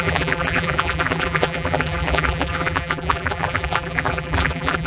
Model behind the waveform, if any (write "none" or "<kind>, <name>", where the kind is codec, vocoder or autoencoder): vocoder, BigVGAN v2